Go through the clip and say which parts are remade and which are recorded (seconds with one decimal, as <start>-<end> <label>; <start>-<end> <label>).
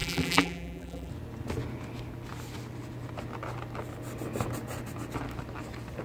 0.0-1.1 remade; 1.1-6.0 recorded